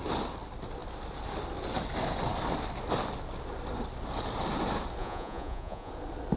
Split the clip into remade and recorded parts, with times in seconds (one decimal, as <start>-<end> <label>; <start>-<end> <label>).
0.0-5.0 recorded; 5.0-5.9 remade; 5.9-6.4 recorded